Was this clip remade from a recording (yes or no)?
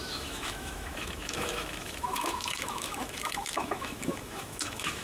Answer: yes